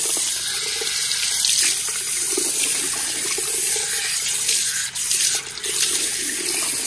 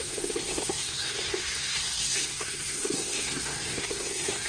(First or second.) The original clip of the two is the first